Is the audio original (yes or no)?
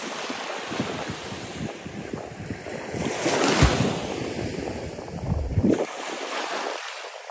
yes